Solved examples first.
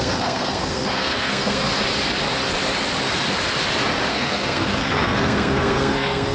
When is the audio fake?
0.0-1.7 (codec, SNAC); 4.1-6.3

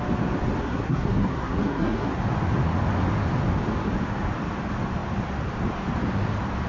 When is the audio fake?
0.6-2.2 (codec, SNAC)